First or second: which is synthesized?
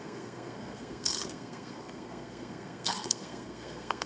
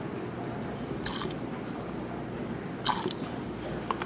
first